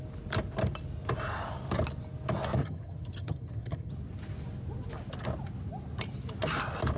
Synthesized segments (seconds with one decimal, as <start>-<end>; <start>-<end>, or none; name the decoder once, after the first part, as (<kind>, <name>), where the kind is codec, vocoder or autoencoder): 2.6-3.9 (vocoder, HiFi-GAN)